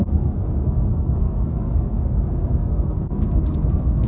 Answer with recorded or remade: remade